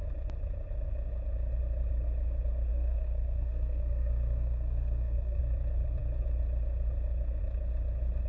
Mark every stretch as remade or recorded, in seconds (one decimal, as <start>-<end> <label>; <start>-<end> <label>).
0.0-2.7 recorded; 2.7-5.4 remade; 5.4-8.3 recorded